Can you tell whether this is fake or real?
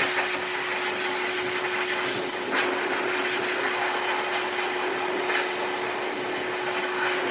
real